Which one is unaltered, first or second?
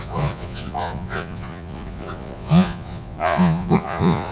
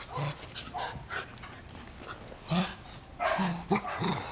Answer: second